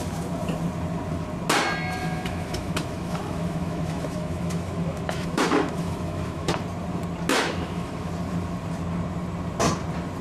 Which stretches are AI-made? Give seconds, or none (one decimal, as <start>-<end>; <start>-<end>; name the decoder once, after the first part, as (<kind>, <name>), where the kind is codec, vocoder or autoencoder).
2.0-6.6 (autoencoder, DAC-VAE); 7.3-8.1